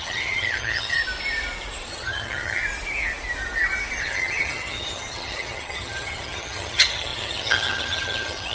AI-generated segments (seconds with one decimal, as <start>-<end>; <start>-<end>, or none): 0.0-1.0; 1.9-2.6; 4.0-8.5